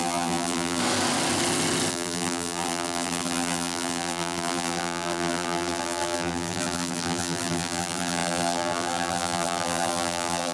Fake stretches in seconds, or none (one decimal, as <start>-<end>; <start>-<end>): 0.0-0.8; 1.9-10.5